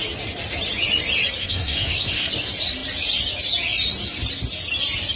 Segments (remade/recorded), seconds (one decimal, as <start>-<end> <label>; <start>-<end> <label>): 0.0-1.4 recorded; 1.4-2.3 remade; 2.3-5.2 recorded